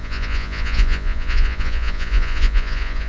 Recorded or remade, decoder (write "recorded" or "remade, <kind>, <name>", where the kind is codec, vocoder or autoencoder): remade, vocoder, Vocos